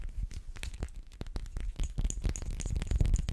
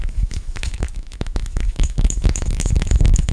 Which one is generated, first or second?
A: second